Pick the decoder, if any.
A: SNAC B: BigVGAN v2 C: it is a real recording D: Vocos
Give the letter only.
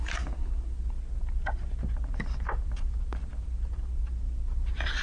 C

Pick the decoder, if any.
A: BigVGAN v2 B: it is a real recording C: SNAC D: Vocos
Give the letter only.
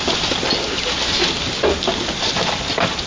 B